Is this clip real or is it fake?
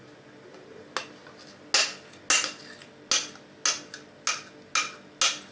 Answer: real